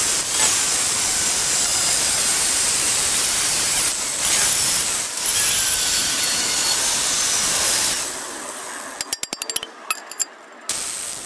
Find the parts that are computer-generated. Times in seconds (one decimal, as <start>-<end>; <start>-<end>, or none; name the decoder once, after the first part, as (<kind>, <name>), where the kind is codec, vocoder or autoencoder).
1.7-3.7 (vocoder, BigVGAN v2)